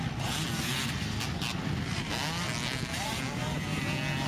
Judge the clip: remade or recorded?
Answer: recorded